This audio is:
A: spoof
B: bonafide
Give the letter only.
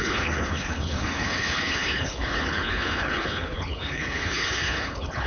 A